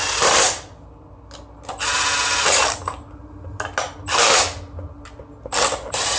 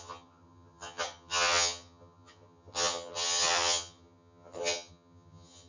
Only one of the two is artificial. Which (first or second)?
second